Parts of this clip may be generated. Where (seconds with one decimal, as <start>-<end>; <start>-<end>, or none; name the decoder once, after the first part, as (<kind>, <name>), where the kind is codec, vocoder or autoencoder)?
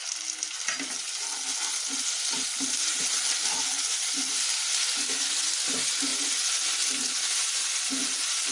none